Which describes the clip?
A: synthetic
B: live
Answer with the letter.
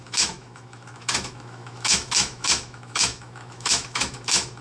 A